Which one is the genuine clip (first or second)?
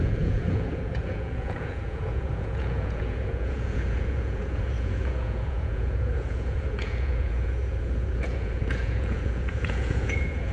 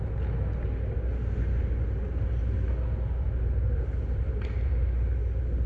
second